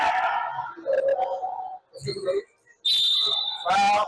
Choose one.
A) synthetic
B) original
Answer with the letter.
B